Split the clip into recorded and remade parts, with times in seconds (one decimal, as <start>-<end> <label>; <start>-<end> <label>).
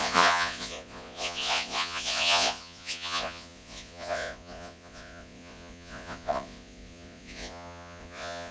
0.0-8.5 remade